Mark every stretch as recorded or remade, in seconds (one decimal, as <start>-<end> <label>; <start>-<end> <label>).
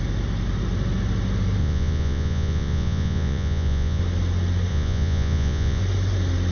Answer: 0.0-1.6 recorded; 1.6-4.0 remade; 4.0-4.7 recorded; 4.7-5.8 remade; 5.8-6.5 recorded